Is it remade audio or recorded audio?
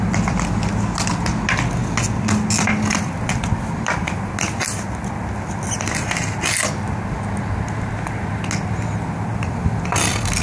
recorded